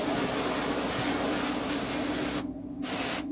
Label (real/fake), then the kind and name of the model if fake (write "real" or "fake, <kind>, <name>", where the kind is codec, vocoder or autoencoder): real